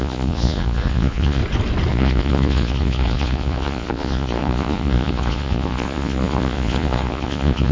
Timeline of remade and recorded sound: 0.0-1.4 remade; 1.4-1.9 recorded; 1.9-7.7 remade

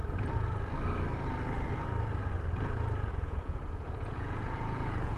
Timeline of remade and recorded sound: 0.0-3.1 recorded; 3.1-5.2 remade